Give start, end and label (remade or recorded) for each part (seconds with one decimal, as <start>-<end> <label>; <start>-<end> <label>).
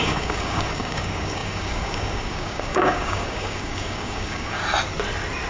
0.0-4.6 remade; 4.6-5.5 recorded